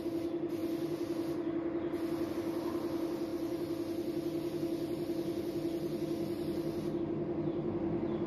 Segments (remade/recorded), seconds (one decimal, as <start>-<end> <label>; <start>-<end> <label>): 0.0-8.3 recorded